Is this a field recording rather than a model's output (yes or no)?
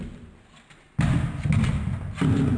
yes